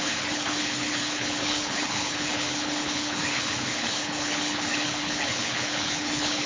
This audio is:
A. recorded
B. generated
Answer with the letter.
B